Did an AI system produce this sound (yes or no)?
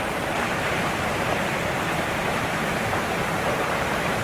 yes